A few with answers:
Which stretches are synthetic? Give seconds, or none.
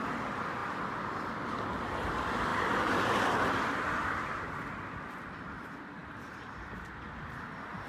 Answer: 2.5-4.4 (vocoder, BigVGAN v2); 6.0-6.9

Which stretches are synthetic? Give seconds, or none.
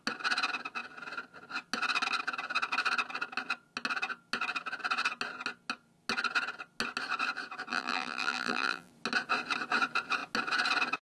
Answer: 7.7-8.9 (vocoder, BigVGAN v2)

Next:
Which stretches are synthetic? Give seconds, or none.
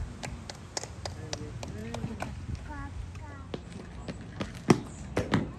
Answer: none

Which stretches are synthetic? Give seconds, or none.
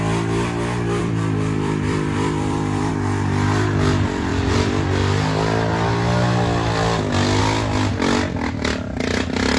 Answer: 1.0-2.9 (vocoder, BigVGAN v2)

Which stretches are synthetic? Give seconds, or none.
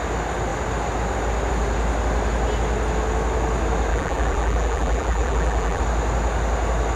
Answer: 3.9-5.8 (vocoder, BigVGAN v2)